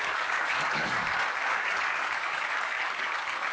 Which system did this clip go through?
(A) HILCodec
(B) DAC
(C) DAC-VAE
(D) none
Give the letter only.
B